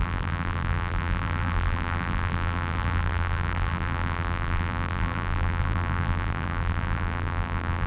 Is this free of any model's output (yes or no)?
no